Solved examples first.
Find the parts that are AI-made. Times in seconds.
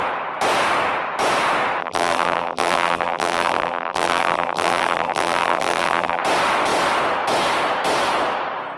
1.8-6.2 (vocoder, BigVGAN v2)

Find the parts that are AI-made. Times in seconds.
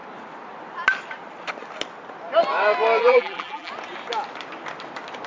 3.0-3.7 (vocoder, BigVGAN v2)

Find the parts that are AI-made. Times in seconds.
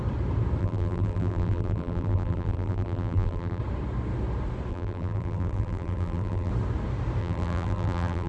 0.6-3.6 (vocoder, BigVGAN v2); 4.7-6.5; 7.2-8.3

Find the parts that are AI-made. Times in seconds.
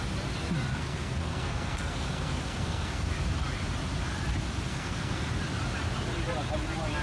0.7-3.1 (codec, SNAC); 4.7-5.3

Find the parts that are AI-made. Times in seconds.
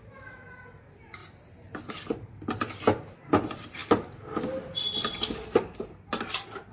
none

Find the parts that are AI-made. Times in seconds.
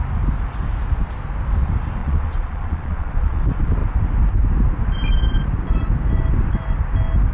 2.0-3.4 (vocoder, Vocos)